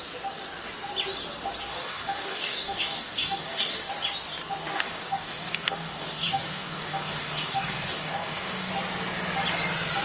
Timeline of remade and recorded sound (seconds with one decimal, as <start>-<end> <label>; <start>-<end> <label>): 0.0-1.7 recorded; 1.7-3.9 remade; 3.9-4.6 recorded; 4.6-8.7 remade; 8.7-10.0 recorded